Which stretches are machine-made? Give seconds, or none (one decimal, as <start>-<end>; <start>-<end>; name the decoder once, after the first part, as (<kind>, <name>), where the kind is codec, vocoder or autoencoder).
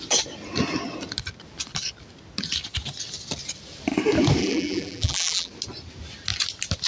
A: 4.4-5.5 (vocoder, BigVGAN v2)